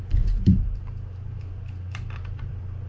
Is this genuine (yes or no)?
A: no